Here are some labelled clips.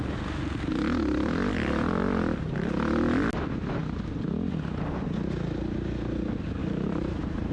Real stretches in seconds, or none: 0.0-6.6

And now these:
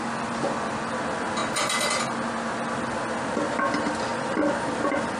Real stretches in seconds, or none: 0.0-4.1

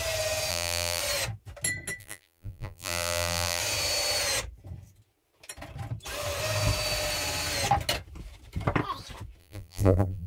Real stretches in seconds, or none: 0.0-0.5; 1.0-2.0; 3.6-9.4

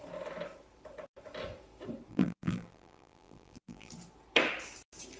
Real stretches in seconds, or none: 0.0-2.1; 3.9-5.2